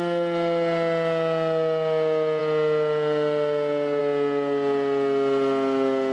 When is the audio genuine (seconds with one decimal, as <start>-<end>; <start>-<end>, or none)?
0.0-6.1